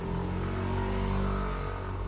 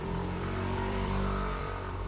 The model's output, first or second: second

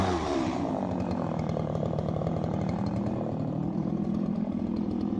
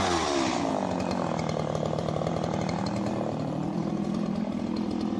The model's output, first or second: first